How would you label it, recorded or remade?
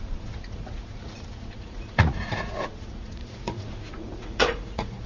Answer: remade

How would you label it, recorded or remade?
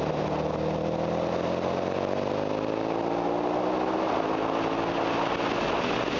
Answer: recorded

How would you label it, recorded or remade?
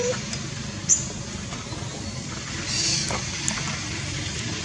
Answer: recorded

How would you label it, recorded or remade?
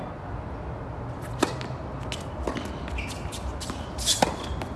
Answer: recorded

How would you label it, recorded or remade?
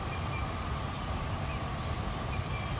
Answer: recorded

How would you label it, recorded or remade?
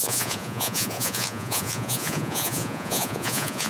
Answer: remade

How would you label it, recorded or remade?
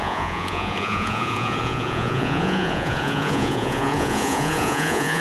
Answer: remade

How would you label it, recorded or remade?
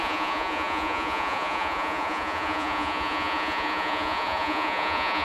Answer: remade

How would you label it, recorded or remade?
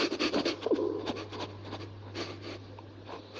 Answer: recorded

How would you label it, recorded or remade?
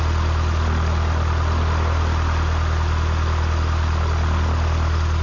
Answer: recorded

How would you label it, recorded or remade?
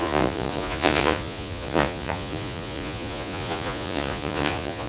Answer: remade